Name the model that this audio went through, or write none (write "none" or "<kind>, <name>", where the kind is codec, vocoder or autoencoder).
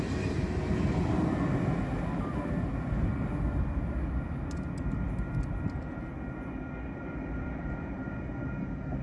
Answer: none